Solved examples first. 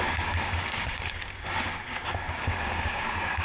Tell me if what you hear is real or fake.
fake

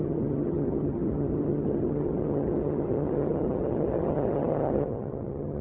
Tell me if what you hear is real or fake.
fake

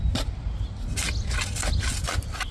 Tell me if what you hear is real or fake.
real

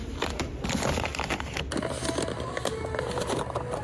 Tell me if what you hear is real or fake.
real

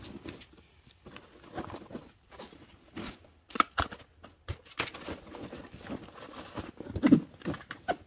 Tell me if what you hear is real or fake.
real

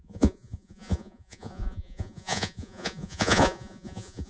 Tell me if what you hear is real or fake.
fake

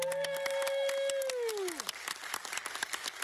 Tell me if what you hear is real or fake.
real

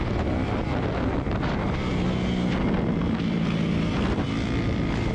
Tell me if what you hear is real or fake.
real